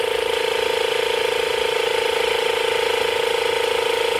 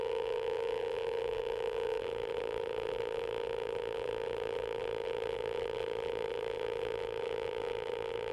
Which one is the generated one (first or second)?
second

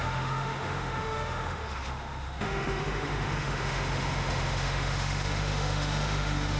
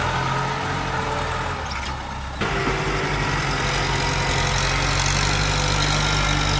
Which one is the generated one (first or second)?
first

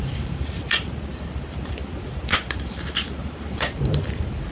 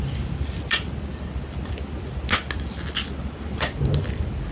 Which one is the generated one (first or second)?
first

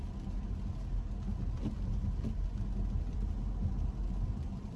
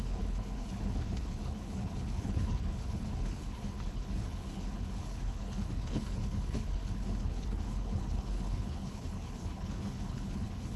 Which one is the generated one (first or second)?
second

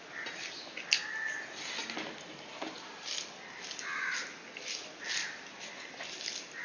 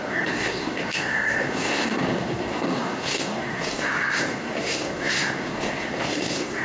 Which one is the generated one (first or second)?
second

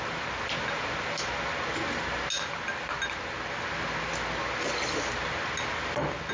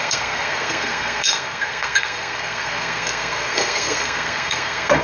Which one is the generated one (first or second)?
second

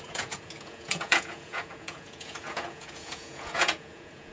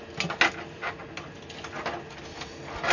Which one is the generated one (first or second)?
first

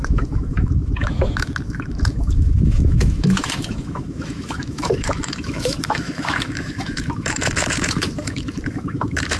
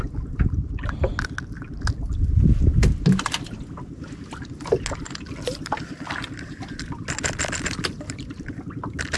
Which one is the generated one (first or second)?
first